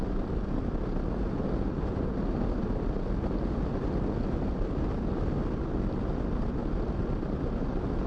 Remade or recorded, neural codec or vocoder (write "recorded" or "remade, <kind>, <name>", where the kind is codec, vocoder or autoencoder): recorded